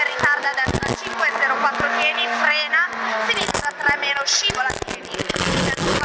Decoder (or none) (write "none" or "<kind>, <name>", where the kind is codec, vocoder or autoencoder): none